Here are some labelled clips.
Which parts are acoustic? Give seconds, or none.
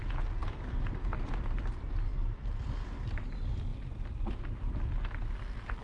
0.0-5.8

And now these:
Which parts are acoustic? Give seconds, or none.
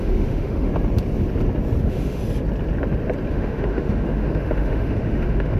0.7-1.8; 2.2-3.3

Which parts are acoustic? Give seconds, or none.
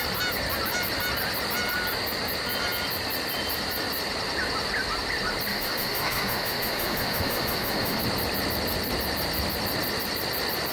0.0-5.5; 8.0-10.7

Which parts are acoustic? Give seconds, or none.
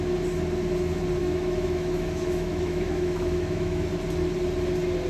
0.0-1.2; 3.9-5.1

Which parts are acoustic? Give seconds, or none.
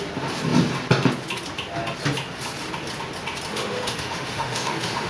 0.0-3.5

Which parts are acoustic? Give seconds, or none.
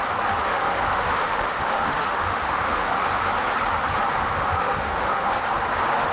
0.0-0.4; 3.2-4.2; 5.3-6.1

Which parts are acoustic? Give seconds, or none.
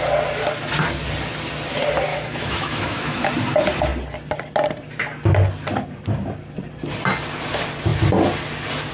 0.0-2.1; 3.3-8.9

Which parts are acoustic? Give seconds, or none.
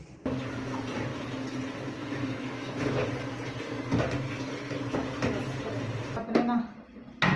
0.0-1.1; 1.6-2.0; 3.1-7.4